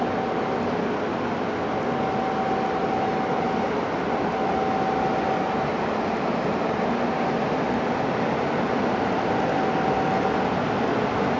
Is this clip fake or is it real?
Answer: real